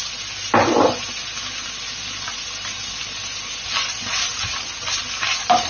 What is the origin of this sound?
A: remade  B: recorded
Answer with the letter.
B